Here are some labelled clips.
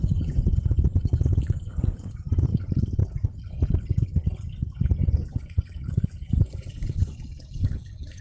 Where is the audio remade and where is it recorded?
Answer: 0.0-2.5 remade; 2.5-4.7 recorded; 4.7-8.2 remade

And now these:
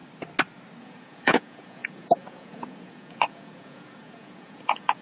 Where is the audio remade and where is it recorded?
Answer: 0.0-0.8 recorded; 0.8-5.0 remade

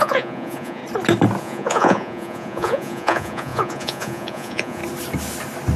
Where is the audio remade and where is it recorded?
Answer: 0.0-0.8 remade; 0.8-1.4 recorded; 1.4-4.8 remade; 4.8-5.8 recorded

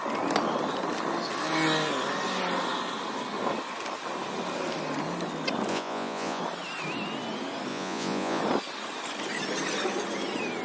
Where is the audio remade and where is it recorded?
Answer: 0.0-5.7 recorded; 5.7-6.4 remade; 6.4-7.7 recorded; 7.7-8.4 remade; 8.4-10.6 recorded